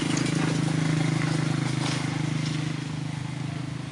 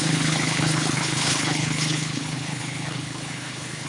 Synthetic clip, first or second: second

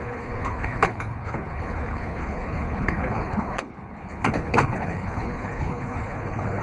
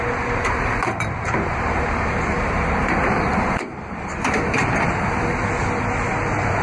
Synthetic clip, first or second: first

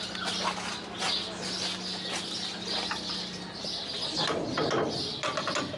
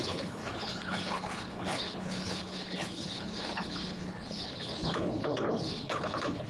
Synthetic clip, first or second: second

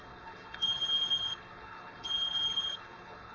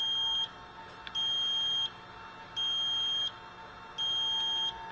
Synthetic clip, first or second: first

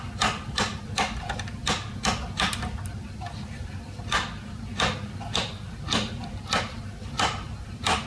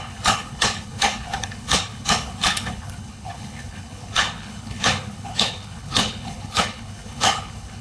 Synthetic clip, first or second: second